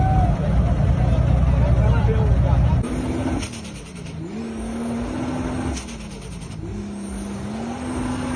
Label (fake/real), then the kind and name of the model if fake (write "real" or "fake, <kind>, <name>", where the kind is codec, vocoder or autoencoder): real